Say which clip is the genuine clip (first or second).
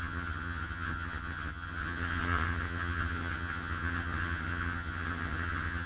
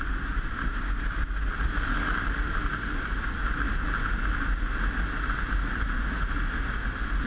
second